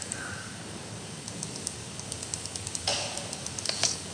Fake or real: fake